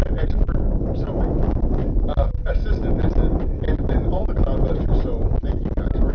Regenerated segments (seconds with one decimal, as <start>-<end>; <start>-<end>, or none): none